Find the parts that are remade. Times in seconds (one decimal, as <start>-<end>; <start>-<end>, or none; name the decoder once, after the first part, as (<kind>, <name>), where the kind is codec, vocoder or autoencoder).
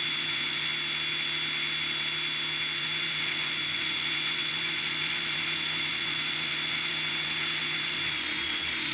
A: 0.0-0.7 (vocoder, Vocos); 2.8-8.9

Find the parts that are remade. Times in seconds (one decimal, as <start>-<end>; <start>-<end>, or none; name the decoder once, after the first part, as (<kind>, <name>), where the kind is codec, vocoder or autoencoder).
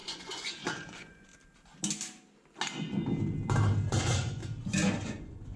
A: 0.0-1.3 (vocoder, Vocos); 3.9-4.4; 5.0-5.6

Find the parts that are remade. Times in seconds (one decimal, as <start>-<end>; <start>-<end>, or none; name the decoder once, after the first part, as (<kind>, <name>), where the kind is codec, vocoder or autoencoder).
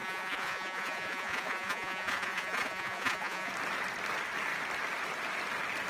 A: 0.0-3.5 (vocoder, Vocos)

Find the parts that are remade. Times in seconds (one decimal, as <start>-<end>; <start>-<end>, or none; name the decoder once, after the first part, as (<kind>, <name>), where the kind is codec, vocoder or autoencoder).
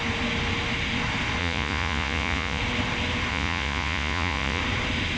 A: 1.4-2.6 (vocoder, Vocos); 3.3-4.6